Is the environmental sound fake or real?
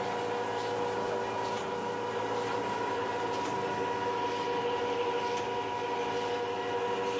real